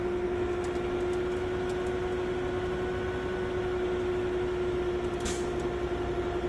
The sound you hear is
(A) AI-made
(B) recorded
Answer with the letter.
B